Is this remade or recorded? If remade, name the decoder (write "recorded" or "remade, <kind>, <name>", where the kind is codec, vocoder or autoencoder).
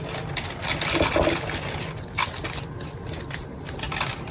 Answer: recorded